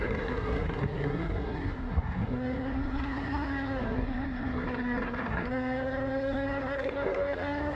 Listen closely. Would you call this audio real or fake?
fake